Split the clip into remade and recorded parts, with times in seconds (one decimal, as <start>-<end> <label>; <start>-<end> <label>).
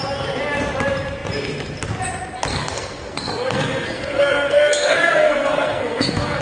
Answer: 0.0-2.5 recorded; 2.5-6.4 remade